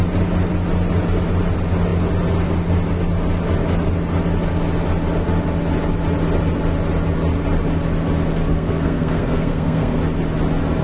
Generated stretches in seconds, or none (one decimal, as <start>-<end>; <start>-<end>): 8.5-10.0